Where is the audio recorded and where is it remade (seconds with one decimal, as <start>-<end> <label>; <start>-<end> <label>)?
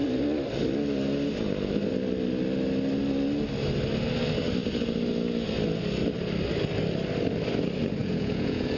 0.0-8.0 recorded; 8.0-8.8 remade